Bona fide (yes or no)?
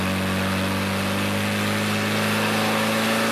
yes